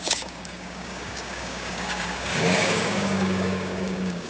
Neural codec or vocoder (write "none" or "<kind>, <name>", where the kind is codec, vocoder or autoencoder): codec, DAC